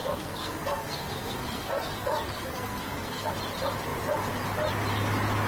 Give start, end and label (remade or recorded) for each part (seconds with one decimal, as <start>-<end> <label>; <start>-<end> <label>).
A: 0.0-3.3 remade; 3.3-5.5 recorded